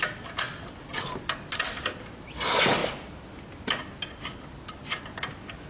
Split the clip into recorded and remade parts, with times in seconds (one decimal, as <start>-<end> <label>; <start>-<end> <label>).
0.0-5.7 recorded